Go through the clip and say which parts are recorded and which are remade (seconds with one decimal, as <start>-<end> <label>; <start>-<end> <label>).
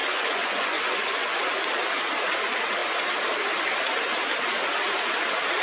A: 0.0-1.4 remade; 1.4-5.6 recorded